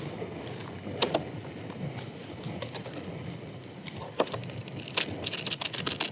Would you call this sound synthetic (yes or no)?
no